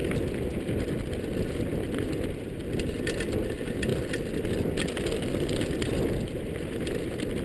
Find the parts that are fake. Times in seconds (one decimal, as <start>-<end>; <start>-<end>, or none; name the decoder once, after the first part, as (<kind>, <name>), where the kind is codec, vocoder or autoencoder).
0.0-1.4 (vocoder, BigVGAN v2)